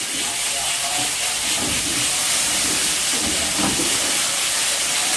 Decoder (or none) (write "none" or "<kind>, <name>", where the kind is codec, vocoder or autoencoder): none